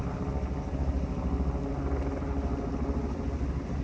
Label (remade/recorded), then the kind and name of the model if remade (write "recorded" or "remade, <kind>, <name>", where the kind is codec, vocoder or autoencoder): recorded